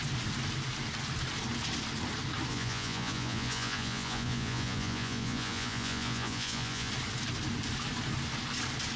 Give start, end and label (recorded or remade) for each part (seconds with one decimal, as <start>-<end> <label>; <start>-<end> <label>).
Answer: 0.0-2.5 recorded; 2.5-6.9 remade; 6.9-9.0 recorded